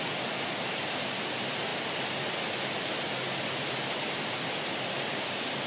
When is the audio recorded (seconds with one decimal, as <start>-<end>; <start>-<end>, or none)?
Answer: 0.0-5.7

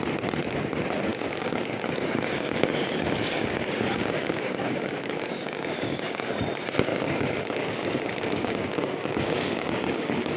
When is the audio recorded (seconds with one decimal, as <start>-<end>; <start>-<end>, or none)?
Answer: 0.0-1.1; 6.4-6.9

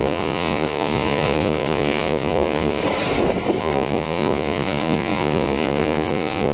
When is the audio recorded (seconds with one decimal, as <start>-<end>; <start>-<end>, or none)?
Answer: 2.8-3.6